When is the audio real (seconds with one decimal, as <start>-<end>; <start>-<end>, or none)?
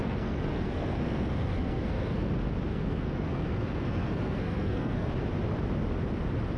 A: 2.3-2.7; 5.1-6.6